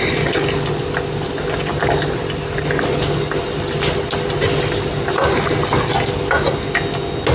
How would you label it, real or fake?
real